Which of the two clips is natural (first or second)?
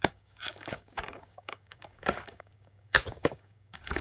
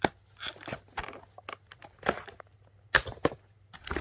second